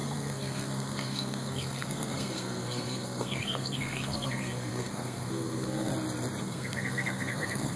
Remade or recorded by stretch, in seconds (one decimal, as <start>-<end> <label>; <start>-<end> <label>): 0.0-5.9 remade; 5.9-6.4 recorded; 6.4-7.8 remade